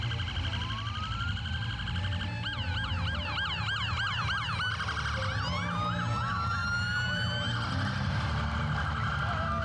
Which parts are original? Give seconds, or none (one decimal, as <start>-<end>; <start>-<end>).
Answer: 0.0-9.6